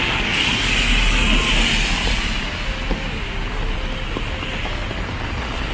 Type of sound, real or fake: real